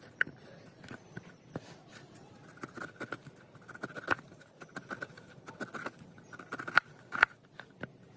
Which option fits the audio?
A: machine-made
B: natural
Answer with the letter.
B